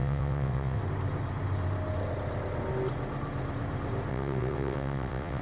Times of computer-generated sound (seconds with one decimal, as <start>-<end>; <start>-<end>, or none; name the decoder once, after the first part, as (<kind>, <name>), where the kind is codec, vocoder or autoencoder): 0.0-0.8 (vocoder, WaveNeXt); 4.1-5.4